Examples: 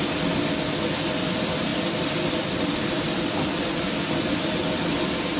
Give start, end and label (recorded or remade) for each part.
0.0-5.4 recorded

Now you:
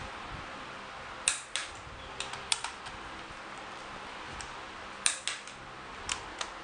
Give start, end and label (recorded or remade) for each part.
0.0-6.6 recorded

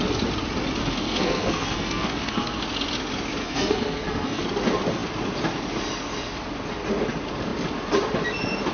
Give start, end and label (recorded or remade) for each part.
0.0-0.8 recorded; 0.8-2.6 remade; 2.6-3.4 recorded; 3.4-4.4 remade; 4.4-8.7 recorded

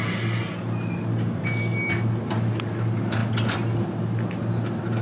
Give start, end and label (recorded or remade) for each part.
0.0-5.0 recorded